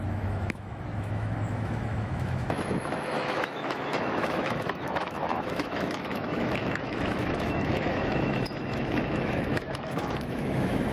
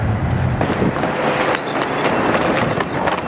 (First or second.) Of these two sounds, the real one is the second